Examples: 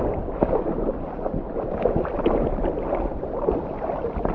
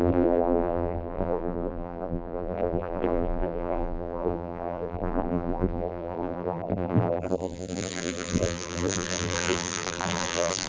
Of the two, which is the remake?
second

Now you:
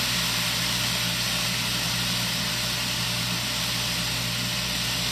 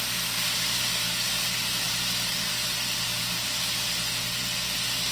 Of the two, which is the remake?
first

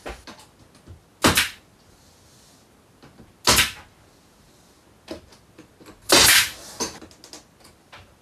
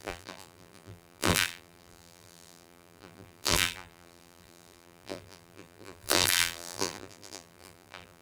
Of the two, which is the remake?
second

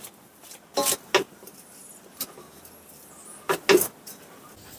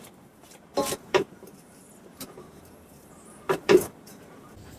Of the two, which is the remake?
second